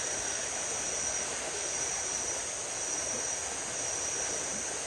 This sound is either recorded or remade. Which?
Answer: recorded